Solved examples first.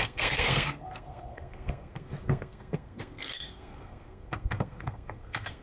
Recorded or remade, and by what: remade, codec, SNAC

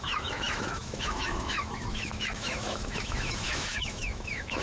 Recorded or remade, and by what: remade, autoencoder, DAC-VAE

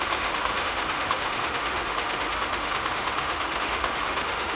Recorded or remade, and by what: remade, autoencoder, DAC-VAE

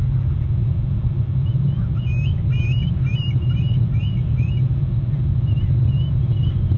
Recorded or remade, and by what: recorded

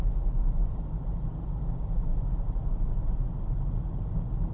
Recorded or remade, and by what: recorded